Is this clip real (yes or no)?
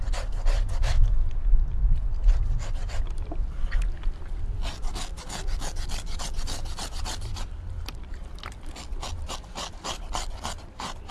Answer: yes